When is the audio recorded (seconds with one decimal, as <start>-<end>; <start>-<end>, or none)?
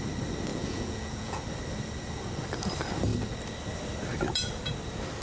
0.0-0.5; 1.4-5.2